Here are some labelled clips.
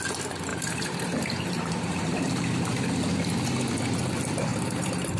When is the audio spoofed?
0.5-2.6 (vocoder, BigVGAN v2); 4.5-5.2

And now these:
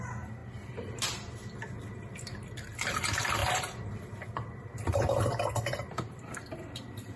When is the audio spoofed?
none

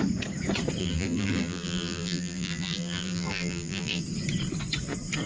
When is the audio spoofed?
0.8-4.0 (vocoder, BigVGAN v2)

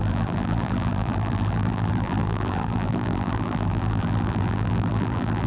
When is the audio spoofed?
0.0-5.5 (vocoder, BigVGAN v2)

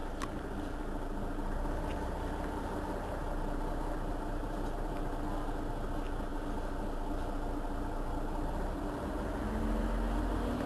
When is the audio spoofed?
4.1-5.0 (vocoder, BigVGAN v2)

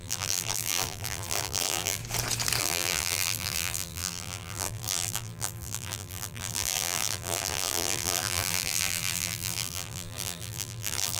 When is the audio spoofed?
0.0-2.0 (vocoder, BigVGAN v2); 2.6-11.2

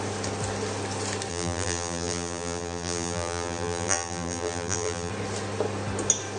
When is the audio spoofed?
1.3-5.1 (vocoder, BigVGAN v2)

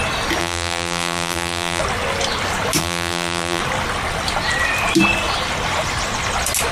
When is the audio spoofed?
0.4-1.8 (vocoder, BigVGAN v2); 2.8-3.6